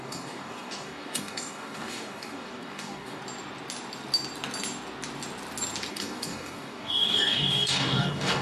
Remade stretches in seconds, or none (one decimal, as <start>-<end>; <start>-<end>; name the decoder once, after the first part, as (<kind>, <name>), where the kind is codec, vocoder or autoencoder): 0.0-3.2 (codec, DAC); 5.9-8.4